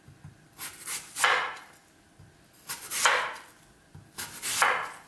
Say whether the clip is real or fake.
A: real